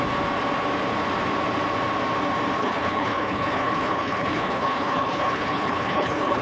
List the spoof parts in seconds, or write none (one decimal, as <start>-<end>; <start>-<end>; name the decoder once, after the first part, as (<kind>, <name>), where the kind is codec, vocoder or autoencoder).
2.6-6.4 (codec, HILCodec)

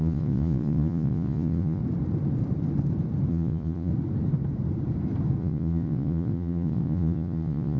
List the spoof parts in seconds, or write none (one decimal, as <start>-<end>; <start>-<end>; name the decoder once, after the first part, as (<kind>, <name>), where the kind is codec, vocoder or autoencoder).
0.0-1.8 (vocoder, Vocos); 3.3-3.9; 5.4-7.8

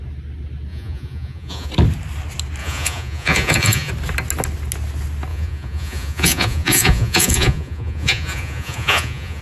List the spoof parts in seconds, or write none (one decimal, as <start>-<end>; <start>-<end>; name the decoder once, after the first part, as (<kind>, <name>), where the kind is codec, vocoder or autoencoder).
0.7-1.7 (vocoder, Vocos); 2.6-3.9; 5.3-9.4